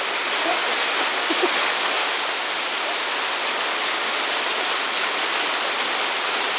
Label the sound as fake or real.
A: real